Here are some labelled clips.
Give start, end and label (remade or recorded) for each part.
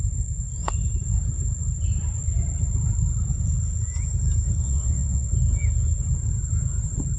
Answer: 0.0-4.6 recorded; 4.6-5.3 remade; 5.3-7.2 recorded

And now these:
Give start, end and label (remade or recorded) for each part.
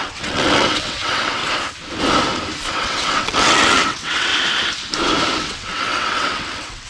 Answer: 0.0-1.4 remade; 1.4-2.7 recorded; 2.7-4.3 remade; 4.3-5.4 recorded; 5.4-6.9 remade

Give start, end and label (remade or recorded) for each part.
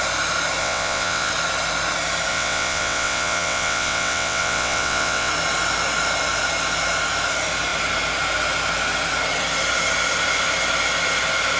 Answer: 0.0-0.6 recorded; 0.6-1.3 remade; 1.3-2.3 recorded; 2.3-5.3 remade; 5.3-11.6 recorded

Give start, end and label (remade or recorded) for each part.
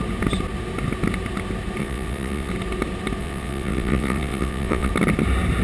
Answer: 0.0-1.8 recorded; 1.8-2.5 remade; 2.5-3.2 recorded; 3.2-4.9 remade; 4.9-5.6 recorded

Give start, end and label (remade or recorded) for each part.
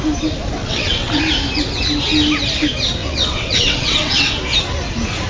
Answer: 0.0-0.6 recorded; 0.6-1.2 remade; 1.2-3.0 recorded; 3.0-4.4 remade; 4.4-5.3 recorded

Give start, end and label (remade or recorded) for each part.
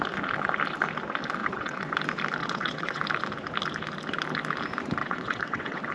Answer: 0.0-1.4 recorded; 1.4-1.9 remade; 1.9-2.4 recorded; 2.4-3.0 remade; 3.0-5.0 recorded; 5.0-5.9 remade